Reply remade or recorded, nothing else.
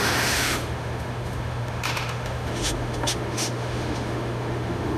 remade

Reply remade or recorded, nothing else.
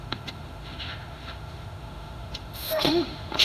remade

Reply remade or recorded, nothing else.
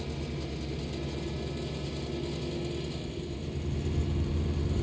recorded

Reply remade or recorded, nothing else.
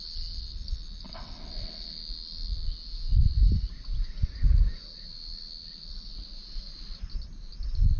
recorded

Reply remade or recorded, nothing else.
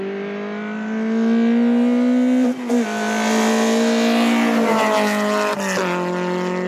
recorded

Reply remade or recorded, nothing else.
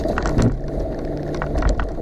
recorded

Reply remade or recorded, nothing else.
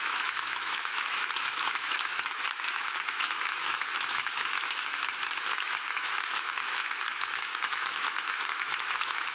remade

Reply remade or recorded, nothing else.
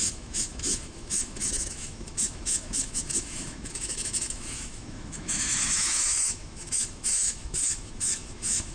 remade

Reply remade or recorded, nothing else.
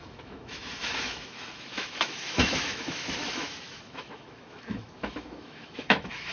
remade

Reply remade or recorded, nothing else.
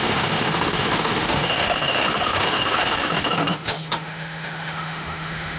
remade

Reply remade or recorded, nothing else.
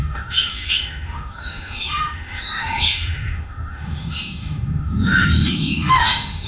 remade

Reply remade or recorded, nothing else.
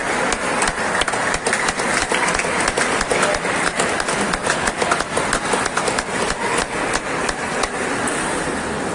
recorded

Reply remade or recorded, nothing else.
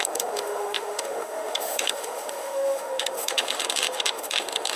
remade